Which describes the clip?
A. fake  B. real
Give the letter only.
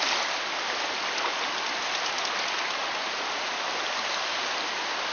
B